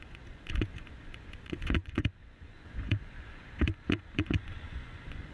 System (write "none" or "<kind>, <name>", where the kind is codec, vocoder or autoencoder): vocoder, Vocos